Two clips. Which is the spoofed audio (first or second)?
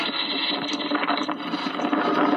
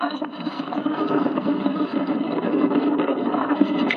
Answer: second